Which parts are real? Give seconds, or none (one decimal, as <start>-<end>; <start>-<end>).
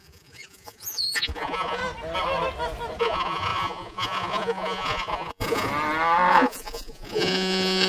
1.8-3.0; 5.7-6.3